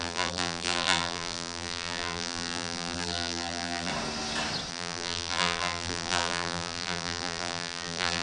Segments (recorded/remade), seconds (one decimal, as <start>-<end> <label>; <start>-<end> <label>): 0.0-3.9 remade; 3.9-4.7 recorded; 4.7-8.2 remade